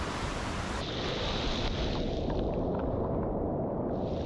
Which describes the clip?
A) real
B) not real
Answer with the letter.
A